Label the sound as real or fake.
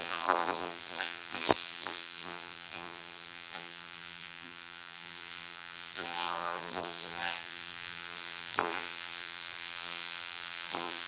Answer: fake